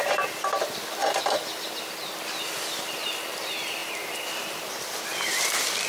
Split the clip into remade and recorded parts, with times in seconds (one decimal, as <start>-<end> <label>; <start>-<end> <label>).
0.0-5.9 remade